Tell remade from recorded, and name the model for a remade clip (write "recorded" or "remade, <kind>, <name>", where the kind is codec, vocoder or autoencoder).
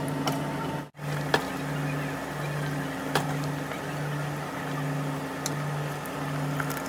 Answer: recorded